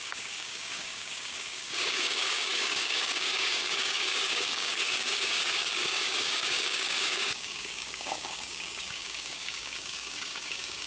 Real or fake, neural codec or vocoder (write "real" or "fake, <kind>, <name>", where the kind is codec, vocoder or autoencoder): fake, codec, DAC